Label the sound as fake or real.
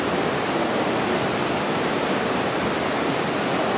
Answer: real